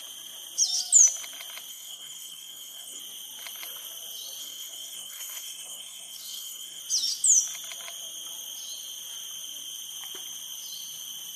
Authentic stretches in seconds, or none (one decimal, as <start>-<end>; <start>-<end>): 0.0-1.7; 3.0-4.4; 6.8-11.4